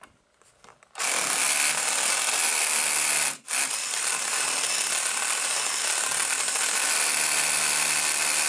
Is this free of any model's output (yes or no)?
yes